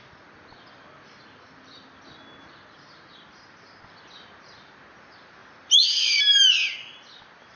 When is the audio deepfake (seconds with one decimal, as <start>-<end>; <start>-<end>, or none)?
none